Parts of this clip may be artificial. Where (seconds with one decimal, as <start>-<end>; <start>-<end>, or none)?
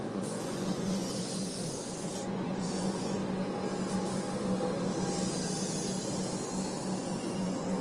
0.0-3.2; 7.0-7.8